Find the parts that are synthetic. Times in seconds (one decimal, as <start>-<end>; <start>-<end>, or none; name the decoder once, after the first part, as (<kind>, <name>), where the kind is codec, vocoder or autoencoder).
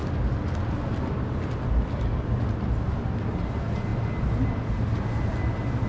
none